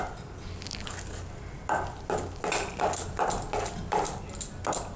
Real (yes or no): yes